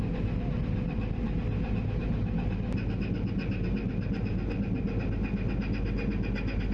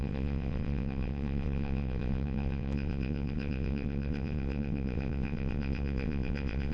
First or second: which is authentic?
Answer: first